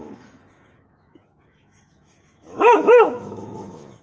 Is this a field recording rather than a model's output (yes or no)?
no